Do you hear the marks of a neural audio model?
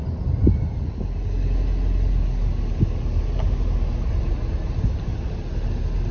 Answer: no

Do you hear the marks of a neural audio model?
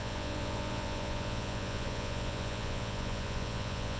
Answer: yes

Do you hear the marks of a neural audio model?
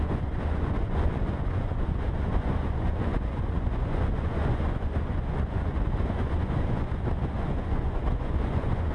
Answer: yes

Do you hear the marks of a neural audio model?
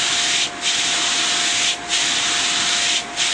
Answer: no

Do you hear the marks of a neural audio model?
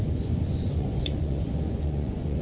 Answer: yes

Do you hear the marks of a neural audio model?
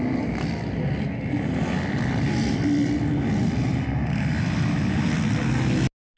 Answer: no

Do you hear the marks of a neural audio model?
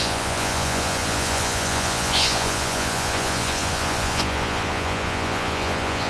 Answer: yes